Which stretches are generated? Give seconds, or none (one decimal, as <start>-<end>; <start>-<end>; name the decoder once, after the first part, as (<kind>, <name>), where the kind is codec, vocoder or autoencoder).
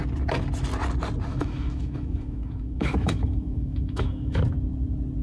1.3-4.4 (autoencoder, DAC-VAE)